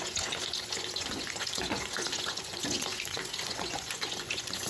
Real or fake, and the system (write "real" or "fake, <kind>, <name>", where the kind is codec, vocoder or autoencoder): fake, vocoder, Vocos